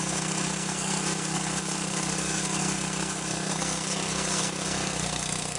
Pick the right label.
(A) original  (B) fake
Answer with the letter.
B